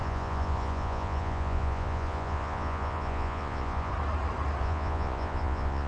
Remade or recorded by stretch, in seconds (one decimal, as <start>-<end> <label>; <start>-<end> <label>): 0.0-3.9 remade; 3.9-4.6 recorded; 4.6-5.9 remade